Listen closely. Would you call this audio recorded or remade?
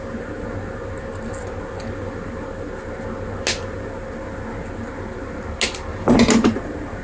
recorded